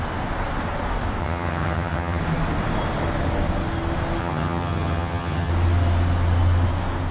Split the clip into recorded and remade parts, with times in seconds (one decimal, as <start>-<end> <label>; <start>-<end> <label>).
0.0-1.2 recorded; 1.2-2.2 remade; 2.2-4.2 recorded; 4.2-5.5 remade; 5.5-7.1 recorded